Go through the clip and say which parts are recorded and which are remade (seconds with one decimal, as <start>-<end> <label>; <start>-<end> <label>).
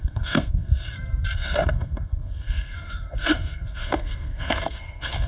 0.0-5.3 remade